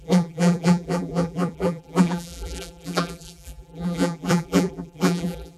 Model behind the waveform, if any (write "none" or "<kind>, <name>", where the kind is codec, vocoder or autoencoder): vocoder, BigVGAN v2